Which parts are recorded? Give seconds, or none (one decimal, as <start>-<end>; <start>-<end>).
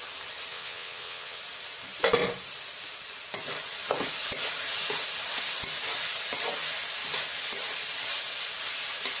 0.0-0.5; 1.4-9.2